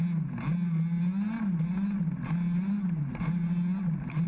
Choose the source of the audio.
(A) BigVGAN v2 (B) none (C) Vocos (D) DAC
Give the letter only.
B